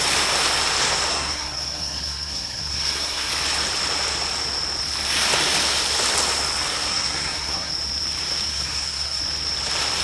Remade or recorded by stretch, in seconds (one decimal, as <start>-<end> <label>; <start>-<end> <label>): 0.0-1.1 recorded; 1.1-3.3 remade; 3.3-6.7 recorded; 6.7-7.7 remade; 7.7-8.5 recorded; 8.5-9.2 remade; 9.2-10.0 recorded